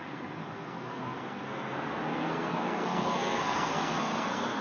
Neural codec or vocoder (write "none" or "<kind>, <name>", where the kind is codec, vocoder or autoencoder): codec, SNAC